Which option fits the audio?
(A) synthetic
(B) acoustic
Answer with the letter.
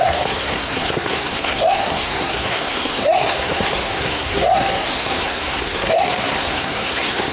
A